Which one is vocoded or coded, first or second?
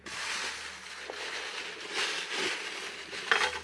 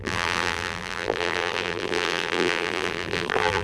second